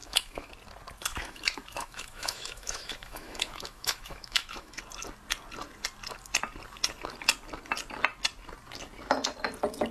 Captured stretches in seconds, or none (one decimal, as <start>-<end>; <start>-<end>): 0.5-1.1; 4.8-9.9